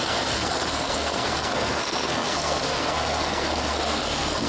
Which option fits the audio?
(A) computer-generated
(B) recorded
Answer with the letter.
A